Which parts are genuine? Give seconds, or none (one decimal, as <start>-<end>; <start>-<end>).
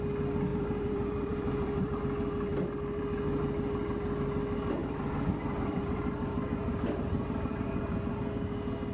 0.0-0.5; 2.0-4.8; 8.1-8.9